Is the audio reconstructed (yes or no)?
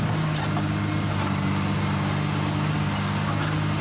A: no